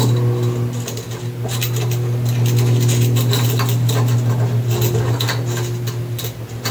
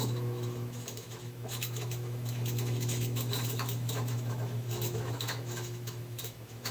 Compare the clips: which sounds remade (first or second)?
second